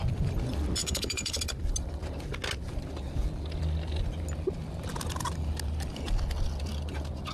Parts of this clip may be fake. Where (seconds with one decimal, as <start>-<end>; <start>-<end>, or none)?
0.8-1.4